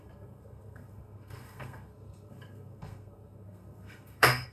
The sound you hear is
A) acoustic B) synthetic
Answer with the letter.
B